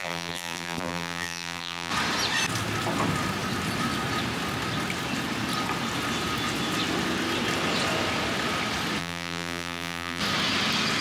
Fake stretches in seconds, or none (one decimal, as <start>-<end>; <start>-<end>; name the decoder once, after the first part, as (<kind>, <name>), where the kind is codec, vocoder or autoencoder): 0.0-1.9 (vocoder, BigVGAN v2); 9.0-10.2